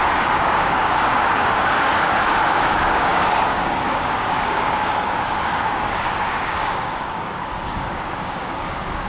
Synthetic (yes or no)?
yes